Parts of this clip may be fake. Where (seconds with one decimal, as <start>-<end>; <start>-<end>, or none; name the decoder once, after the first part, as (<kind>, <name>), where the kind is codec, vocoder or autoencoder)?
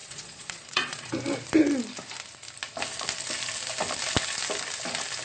0.0-1.1 (vocoder, Vocos)